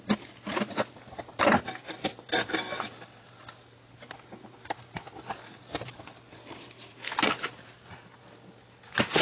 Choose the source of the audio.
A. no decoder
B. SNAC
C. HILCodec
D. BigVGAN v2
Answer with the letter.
A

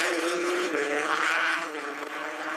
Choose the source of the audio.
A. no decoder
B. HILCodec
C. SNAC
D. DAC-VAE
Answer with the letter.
B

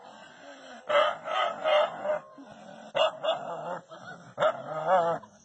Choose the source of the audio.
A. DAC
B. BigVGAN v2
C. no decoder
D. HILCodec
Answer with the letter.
C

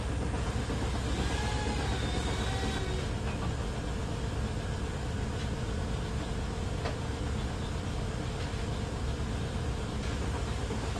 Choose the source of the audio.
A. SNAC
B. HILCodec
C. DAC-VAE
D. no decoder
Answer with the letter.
D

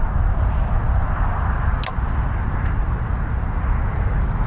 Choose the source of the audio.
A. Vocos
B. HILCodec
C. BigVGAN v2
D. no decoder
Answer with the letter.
D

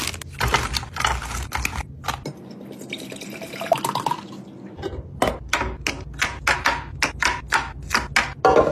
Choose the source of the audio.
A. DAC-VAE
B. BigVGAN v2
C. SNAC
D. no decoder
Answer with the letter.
D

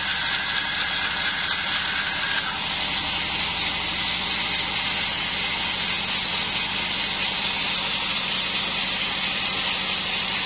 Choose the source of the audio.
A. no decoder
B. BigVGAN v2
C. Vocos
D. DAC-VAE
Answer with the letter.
A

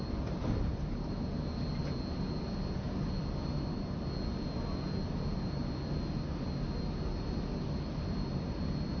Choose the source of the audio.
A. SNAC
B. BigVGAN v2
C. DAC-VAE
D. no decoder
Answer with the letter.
D